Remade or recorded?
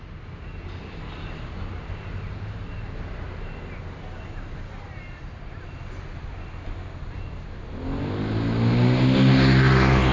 recorded